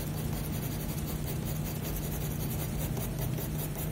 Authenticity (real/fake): real